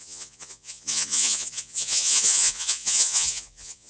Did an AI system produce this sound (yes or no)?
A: yes